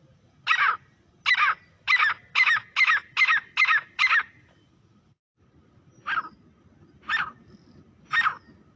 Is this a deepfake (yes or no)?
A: no